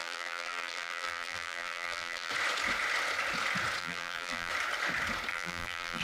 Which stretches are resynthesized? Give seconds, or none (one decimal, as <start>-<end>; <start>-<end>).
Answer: 0.0-2.3; 3.8-4.5; 5.3-6.0